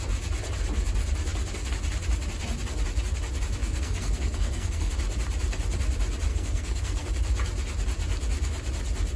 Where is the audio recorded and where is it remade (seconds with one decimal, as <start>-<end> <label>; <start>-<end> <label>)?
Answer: 0.0-3.6 recorded; 3.6-4.9 remade; 4.9-6.3 recorded; 6.3-7.1 remade; 7.1-9.2 recorded